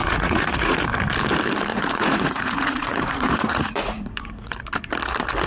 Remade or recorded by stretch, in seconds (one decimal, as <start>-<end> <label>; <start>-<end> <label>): 0.0-0.8 remade; 0.8-1.7 recorded; 1.7-4.6 remade; 4.6-5.5 recorded

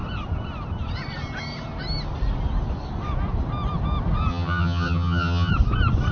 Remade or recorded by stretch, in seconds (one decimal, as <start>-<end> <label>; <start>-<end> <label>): 0.0-4.3 recorded; 4.3-5.5 remade; 5.5-6.1 recorded

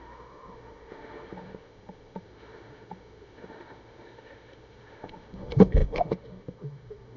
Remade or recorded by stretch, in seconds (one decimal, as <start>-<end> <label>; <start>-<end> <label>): 0.0-7.2 remade

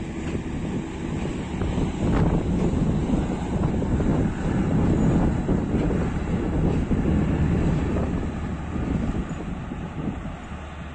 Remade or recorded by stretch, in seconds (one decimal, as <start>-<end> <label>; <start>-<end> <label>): 0.0-10.9 recorded

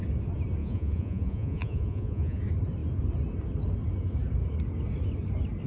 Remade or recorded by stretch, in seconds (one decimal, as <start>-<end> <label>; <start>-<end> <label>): 0.0-0.6 recorded; 0.6-2.4 remade; 2.4-5.7 recorded